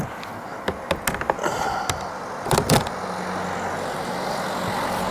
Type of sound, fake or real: real